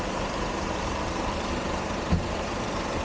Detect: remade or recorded remade